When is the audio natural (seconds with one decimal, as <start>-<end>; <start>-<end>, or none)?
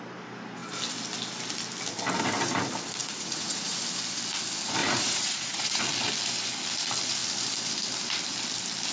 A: 0.0-3.0; 3.8-4.8; 5.8-8.9